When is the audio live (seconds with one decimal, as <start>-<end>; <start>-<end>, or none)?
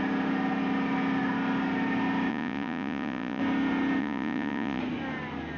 0.0-2.3; 3.4-4.0; 4.8-5.6